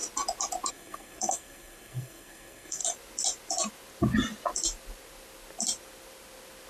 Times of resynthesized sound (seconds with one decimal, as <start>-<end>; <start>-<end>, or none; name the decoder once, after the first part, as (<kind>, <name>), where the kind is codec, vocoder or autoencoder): 0.7-2.8 (codec, SNAC)